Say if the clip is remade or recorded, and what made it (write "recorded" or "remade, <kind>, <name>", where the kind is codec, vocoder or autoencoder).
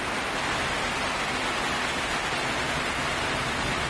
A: recorded